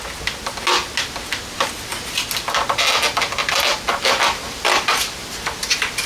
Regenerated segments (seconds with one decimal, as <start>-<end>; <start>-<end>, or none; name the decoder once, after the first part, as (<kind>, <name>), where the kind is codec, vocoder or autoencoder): none